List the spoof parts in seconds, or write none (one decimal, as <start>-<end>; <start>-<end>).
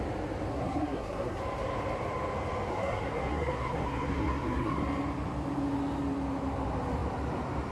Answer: 0.5-1.4; 2.7-4.8